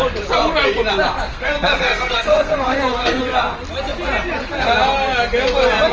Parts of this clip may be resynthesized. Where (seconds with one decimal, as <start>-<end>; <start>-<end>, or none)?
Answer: 1.3-3.2